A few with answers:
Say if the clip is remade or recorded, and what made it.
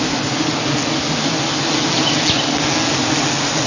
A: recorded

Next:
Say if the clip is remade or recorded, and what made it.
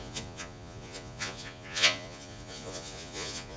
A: remade, vocoder, Vocos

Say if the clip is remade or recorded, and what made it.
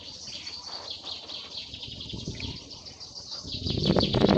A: recorded